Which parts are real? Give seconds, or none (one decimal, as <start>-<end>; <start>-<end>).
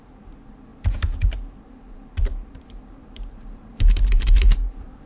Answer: none